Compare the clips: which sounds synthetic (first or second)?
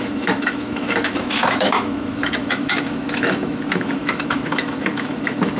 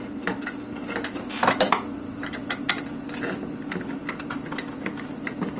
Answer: first